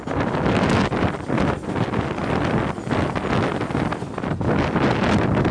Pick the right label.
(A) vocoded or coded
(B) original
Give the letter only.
B